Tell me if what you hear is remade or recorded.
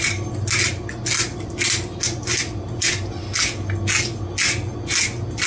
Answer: recorded